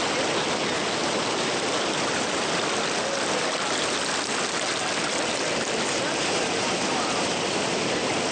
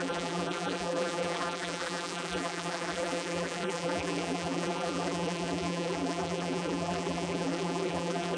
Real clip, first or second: first